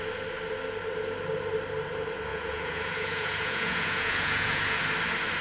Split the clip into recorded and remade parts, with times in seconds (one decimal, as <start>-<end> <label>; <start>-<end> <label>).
0.0-2.3 recorded; 2.3-4.8 remade; 4.8-5.4 recorded